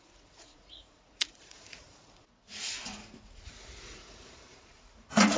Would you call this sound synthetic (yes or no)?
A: yes